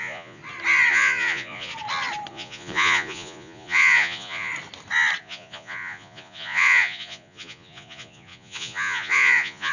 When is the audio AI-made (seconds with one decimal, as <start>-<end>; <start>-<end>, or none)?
0.0-0.4; 0.9-1.7; 2.3-4.5; 5.2-9.7